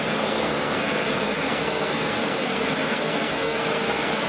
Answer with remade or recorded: remade